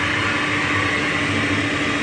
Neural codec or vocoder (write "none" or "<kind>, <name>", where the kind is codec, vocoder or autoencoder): none